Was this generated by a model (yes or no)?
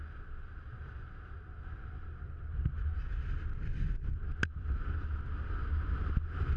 no